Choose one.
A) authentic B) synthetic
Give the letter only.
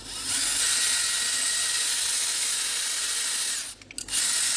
A